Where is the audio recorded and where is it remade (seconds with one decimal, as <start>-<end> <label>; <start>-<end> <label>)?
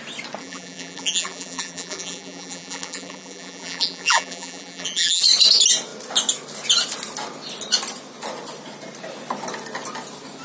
0.0-0.4 recorded; 0.4-5.2 remade; 5.2-10.4 recorded